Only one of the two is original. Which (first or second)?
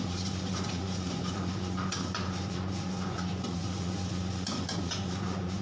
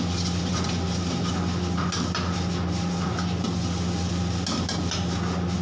second